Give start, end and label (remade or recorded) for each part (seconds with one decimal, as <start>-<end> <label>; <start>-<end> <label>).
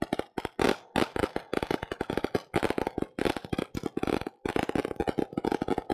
0.0-3.4 recorded; 3.4-4.5 remade; 4.5-5.9 recorded